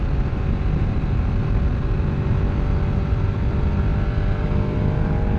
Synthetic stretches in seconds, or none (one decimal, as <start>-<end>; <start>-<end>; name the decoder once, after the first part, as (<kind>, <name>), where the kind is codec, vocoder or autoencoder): none